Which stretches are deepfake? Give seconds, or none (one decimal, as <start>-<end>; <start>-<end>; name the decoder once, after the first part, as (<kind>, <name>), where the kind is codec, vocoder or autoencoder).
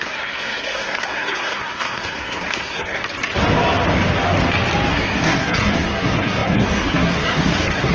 0.0-3.0 (codec, SNAC); 4.9-7.9